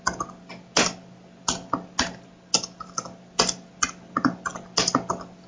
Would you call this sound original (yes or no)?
yes